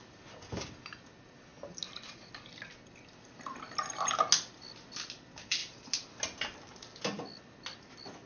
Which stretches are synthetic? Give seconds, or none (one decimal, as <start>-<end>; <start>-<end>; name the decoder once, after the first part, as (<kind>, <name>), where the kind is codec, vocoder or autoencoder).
none